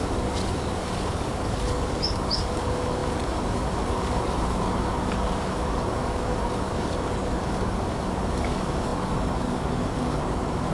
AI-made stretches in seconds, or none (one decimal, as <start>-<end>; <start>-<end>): 0.0-10.7